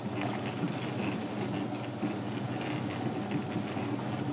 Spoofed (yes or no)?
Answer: no